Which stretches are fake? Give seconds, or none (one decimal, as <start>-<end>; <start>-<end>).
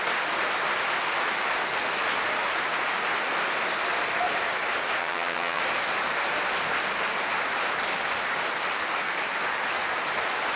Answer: 5.0-5.6